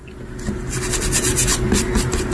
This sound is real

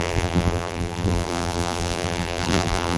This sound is fake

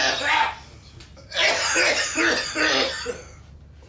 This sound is real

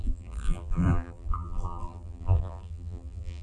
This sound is fake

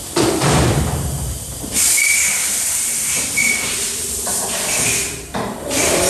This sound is fake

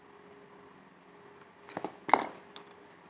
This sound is real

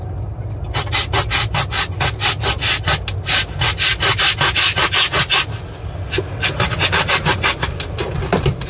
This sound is real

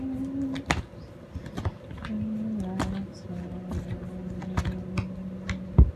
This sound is real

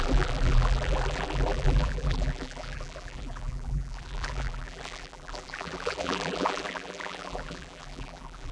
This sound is fake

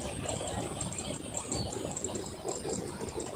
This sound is real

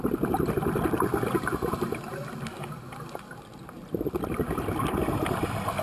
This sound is real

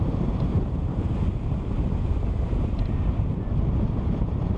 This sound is fake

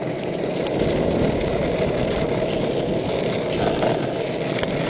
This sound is real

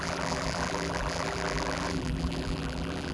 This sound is fake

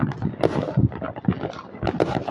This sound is real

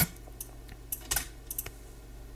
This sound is real